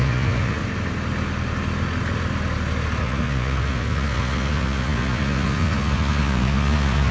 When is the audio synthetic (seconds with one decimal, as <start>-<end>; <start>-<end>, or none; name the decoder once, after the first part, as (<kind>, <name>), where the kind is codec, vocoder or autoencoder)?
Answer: 0.0-0.6 (vocoder, Vocos); 3.0-7.1